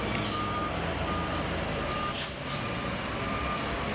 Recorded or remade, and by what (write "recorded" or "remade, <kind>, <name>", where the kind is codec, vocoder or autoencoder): recorded